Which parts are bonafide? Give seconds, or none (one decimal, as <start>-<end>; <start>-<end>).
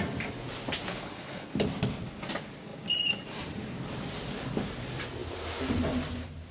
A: 0.0-0.9; 1.5-6.5